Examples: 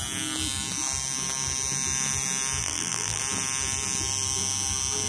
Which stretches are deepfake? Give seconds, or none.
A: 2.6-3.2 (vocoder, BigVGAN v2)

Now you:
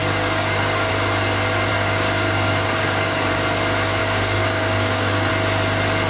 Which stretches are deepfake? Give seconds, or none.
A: 0.0-0.9 (codec, DAC); 1.7-3.3; 4.0-5.3

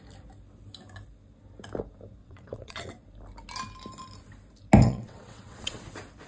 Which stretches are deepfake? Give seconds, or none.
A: 2.2-2.9 (vocoder, WaveNeXt); 4.8-5.8

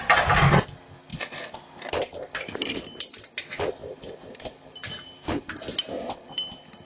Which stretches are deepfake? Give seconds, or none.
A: 3.8-5.6 (vocoder, BigVGAN v2)